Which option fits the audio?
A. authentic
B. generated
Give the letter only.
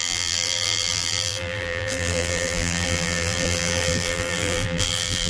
B